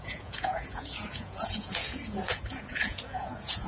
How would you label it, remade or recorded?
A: remade